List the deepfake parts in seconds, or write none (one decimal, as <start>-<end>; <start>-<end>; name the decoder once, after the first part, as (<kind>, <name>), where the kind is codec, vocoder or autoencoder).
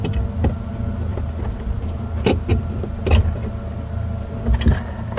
1.1-2.0 (vocoder, BigVGAN v2)